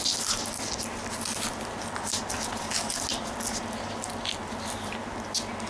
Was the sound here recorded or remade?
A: recorded